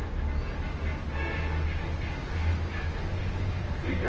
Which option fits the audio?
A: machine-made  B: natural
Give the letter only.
B